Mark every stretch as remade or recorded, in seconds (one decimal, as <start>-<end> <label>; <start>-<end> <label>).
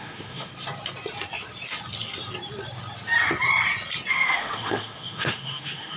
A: 0.0-0.5 remade; 0.5-4.1 recorded; 4.1-6.0 remade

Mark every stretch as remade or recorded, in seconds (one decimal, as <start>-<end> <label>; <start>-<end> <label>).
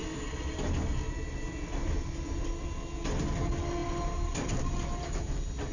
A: 0.0-5.7 recorded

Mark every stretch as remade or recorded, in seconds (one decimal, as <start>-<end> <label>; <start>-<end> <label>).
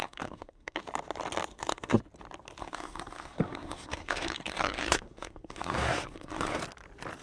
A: 0.0-0.8 remade; 0.8-1.5 recorded; 1.5-2.0 remade; 2.0-2.6 recorded; 2.6-6.6 remade; 6.6-7.2 recorded